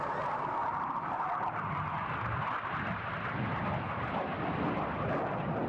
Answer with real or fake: real